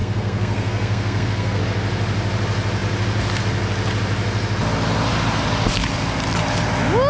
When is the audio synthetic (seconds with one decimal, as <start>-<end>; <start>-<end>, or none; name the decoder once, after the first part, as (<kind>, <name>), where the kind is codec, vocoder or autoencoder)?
0.0-1.6 (codec, SNAC)